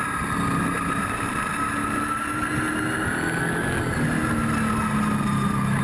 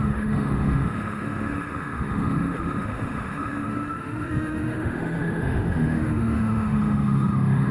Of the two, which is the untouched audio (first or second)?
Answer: first